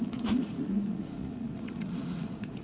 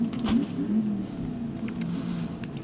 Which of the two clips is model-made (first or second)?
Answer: first